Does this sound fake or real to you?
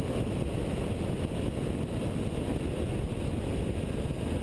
real